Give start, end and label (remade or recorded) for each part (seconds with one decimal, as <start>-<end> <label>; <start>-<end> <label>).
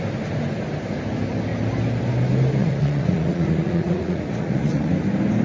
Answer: 0.0-2.6 recorded; 2.6-4.9 remade; 4.9-5.4 recorded